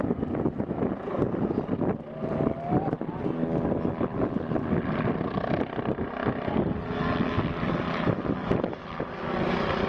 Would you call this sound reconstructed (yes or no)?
no